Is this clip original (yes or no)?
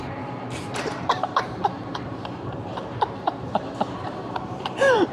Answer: no